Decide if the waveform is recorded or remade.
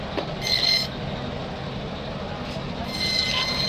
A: recorded